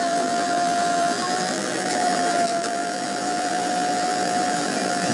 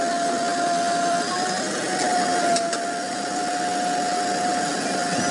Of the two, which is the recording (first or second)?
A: second